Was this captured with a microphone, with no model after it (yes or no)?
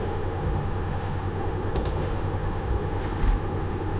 no